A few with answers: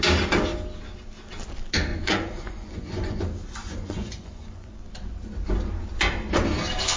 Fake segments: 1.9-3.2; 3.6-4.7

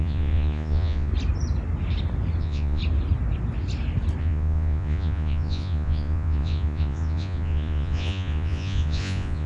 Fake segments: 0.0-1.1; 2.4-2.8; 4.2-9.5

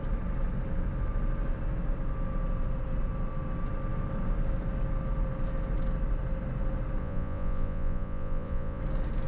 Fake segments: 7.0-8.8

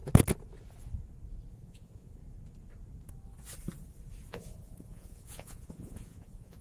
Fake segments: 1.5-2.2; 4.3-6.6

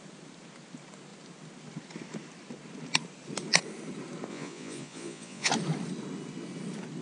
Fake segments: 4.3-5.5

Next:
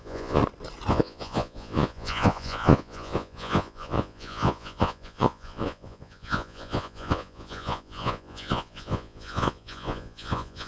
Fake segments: 0.0-0.4; 0.9-10.7